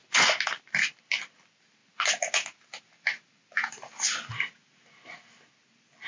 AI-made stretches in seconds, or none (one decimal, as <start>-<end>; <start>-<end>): none

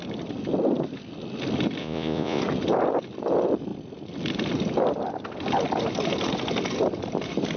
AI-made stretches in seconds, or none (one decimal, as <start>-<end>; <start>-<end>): 1.8-2.4

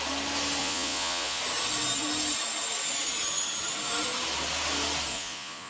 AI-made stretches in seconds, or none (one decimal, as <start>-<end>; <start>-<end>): 0.6-1.4; 5.1-5.7

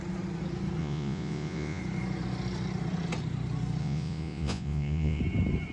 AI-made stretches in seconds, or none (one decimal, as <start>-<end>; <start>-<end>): 0.8-1.8; 3.8-5.2

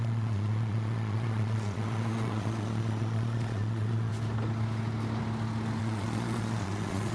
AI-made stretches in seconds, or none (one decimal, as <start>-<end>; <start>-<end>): 0.0-4.1; 5.8-7.1

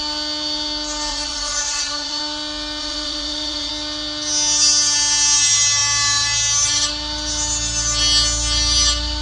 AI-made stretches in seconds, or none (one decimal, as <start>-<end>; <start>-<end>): 1.1-2.2; 2.8-3.7

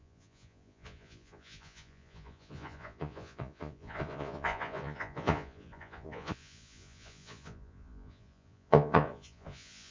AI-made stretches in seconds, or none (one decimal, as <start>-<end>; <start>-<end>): 0.0-9.9

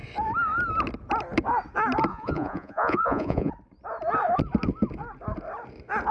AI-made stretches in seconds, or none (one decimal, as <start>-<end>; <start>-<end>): 2.1-3.5